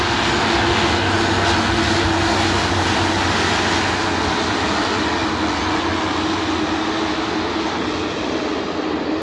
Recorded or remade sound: recorded